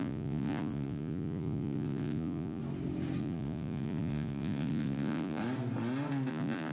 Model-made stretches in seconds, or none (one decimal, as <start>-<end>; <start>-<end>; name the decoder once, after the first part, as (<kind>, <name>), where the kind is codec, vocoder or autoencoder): 0.0-2.6 (vocoder, Vocos); 3.2-5.4; 6.3-6.7

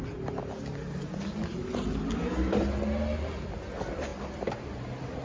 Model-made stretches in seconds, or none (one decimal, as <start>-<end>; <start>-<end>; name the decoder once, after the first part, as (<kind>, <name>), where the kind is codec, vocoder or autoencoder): none

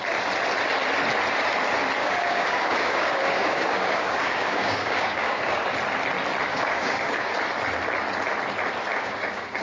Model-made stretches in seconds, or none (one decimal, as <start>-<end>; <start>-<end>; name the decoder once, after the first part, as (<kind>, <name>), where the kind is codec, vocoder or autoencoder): 2.0-5.7 (codec, DAC); 6.5-7.3; 8.9-9.6

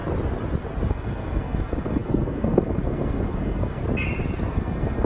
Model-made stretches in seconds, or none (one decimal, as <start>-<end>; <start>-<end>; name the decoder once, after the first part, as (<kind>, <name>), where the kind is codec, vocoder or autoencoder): 0.9-3.8 (codec, SNAC); 4.5-5.1

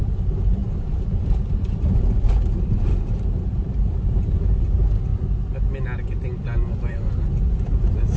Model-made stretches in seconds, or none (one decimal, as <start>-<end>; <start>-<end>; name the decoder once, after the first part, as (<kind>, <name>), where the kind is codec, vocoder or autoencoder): 0.0-5.1 (vocoder, BigVGAN v2); 6.9-8.2

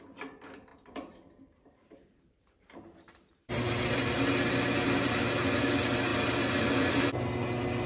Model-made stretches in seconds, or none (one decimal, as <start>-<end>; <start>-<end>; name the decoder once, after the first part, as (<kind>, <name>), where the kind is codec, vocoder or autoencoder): 0.7-4.0 (vocoder, BigVGAN v2)